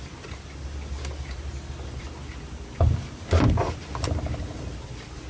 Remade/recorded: recorded